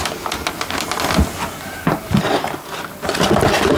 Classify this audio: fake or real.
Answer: real